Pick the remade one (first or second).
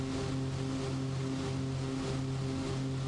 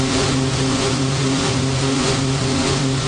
second